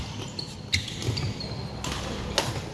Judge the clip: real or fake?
real